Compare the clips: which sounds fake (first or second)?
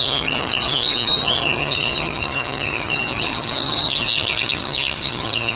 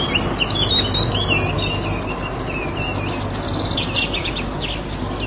first